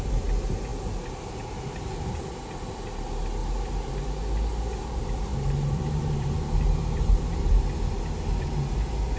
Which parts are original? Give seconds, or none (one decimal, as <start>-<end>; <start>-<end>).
0.0-3.4; 3.9-5.3; 7.4-9.2